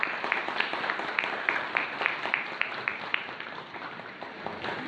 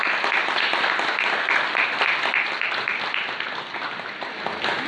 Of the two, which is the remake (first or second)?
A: first